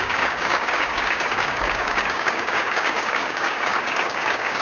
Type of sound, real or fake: fake